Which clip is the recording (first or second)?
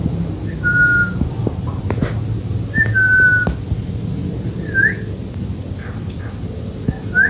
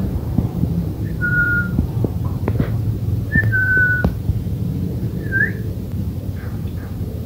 first